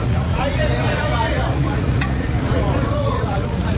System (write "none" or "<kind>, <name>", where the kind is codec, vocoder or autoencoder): vocoder, Vocos